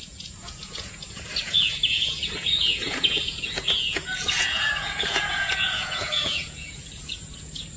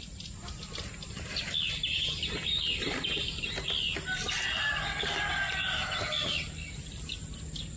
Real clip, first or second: second